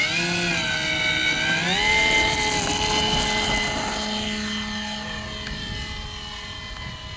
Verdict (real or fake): real